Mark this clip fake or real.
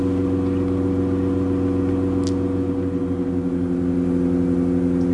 real